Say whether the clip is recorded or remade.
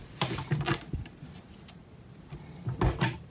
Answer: recorded